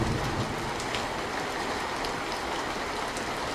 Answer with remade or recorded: recorded